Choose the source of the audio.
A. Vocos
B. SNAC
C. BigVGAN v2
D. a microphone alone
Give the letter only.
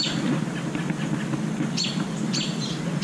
D